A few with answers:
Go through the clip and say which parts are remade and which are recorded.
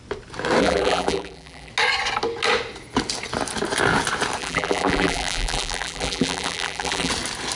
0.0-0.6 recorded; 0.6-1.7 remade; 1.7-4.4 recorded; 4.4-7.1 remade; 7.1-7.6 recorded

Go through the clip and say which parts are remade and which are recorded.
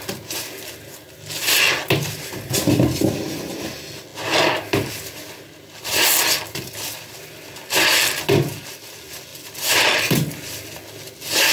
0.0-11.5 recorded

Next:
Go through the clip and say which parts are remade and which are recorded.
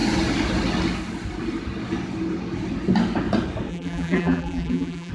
0.0-3.7 recorded; 3.7-5.1 remade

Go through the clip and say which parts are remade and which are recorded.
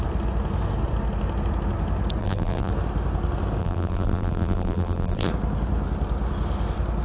0.0-2.2 recorded; 2.2-2.7 remade; 2.7-3.6 recorded; 3.6-5.3 remade; 5.3-7.0 recorded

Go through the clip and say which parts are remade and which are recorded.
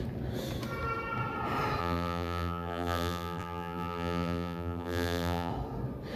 0.0-1.8 recorded; 1.8-5.5 remade; 5.5-6.2 recorded